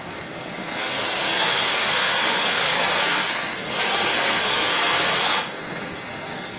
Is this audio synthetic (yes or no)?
yes